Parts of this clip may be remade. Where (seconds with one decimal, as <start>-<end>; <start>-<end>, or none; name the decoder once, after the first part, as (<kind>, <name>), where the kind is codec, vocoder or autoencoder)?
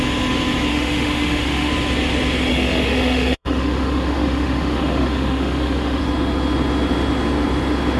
0.7-1.7 (autoencoder, DAC-VAE); 2.5-6.0